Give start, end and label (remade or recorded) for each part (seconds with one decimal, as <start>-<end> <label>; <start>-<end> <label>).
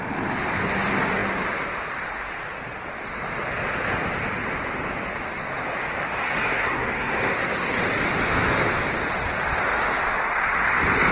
0.0-6.4 recorded; 6.4-7.8 remade; 7.8-11.1 recorded